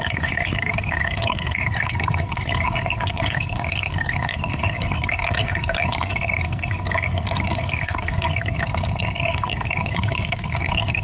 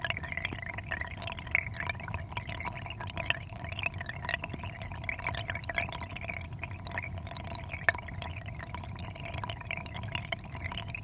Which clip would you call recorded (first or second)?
second